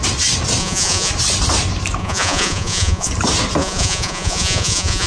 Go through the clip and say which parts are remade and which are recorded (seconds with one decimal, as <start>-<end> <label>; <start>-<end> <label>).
0.0-0.6 recorded; 0.6-1.1 remade; 1.1-2.0 recorded; 2.0-3.1 remade; 3.1-3.6 recorded; 3.6-5.1 remade